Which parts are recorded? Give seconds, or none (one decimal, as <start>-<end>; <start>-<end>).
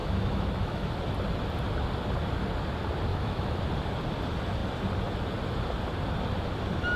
0.9-3.1; 3.6-7.0